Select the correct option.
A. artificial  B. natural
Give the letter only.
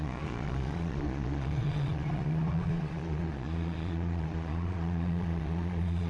A